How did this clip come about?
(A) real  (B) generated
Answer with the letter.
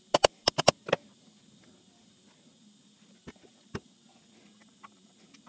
A